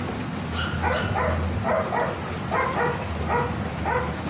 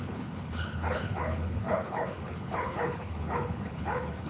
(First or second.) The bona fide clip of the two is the first